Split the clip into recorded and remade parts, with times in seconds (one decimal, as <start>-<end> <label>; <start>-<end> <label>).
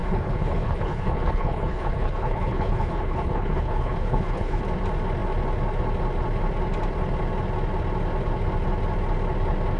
0.0-4.6 remade; 4.6-9.8 recorded